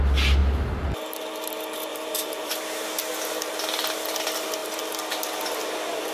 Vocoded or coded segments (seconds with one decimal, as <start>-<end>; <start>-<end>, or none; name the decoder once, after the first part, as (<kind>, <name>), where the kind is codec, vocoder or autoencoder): 1.9-2.5 (vocoder, BigVGAN v2)